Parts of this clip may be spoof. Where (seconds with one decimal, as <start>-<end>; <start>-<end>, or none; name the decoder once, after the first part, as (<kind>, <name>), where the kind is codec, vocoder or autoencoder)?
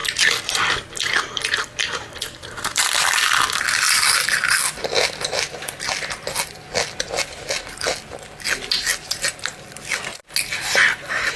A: 0.0-3.3 (vocoder, BigVGAN v2)